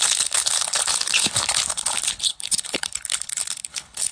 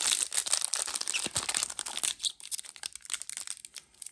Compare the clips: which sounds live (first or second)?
second